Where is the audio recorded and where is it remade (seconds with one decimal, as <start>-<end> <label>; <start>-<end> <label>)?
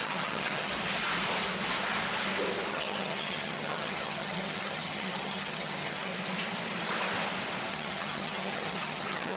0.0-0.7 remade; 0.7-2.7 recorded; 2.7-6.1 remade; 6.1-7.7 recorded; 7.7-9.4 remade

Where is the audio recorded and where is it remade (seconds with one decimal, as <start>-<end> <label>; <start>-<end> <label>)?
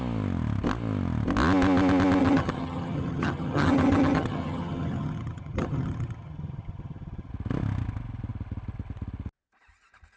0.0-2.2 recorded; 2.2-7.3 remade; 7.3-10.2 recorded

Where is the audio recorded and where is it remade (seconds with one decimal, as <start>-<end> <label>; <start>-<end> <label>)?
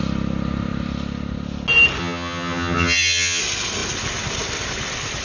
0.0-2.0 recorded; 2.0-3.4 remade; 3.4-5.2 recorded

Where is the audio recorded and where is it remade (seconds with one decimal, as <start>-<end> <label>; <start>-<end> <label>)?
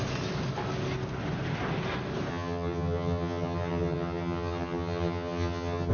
0.0-2.3 recorded; 2.3-5.9 remade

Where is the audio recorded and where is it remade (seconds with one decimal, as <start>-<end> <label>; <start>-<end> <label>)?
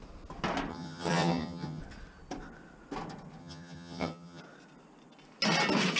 0.0-0.7 recorded; 0.7-1.8 remade; 1.8-3.4 recorded; 3.4-4.4 remade; 4.4-6.0 recorded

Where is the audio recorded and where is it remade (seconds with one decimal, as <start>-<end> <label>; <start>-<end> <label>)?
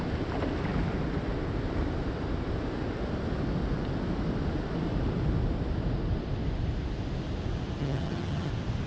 0.0-7.8 recorded; 7.8-8.5 remade; 8.5-8.9 recorded